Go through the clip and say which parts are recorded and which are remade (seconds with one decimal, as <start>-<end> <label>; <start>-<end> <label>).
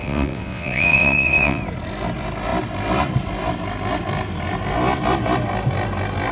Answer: 0.0-1.6 remade; 1.6-6.3 recorded